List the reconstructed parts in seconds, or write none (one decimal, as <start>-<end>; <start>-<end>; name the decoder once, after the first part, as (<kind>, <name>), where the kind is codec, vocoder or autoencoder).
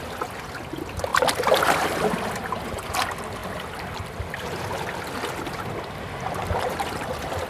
1.1-2.1 (vocoder, BigVGAN v2)